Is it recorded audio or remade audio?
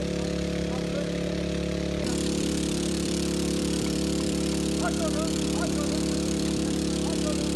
remade